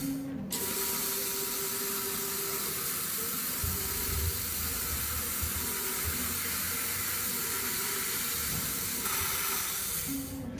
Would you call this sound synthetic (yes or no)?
no